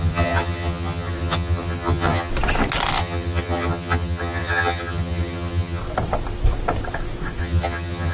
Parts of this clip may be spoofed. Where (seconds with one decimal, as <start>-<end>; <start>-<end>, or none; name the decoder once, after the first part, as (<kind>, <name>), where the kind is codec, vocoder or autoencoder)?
0.0-2.3 (vocoder, HiFi-GAN); 3.0-5.8; 7.4-8.1